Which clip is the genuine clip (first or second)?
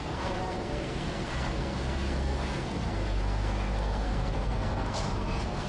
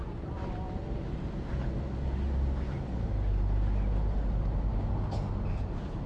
second